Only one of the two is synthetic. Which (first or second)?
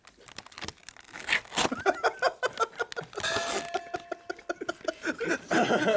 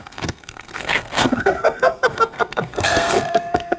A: second